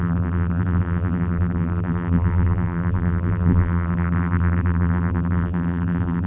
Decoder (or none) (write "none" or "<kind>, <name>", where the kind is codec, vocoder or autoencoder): vocoder, BigVGAN v2